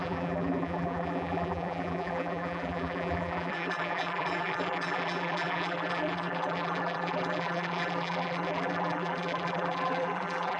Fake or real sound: fake